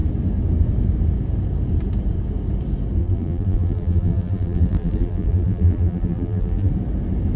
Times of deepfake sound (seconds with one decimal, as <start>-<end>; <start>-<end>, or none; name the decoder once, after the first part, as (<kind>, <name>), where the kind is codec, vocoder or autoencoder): 3.0-6.7 (vocoder, BigVGAN v2)